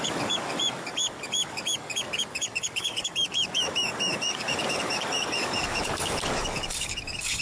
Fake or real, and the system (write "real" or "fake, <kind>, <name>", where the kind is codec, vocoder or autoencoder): fake, codec, DAC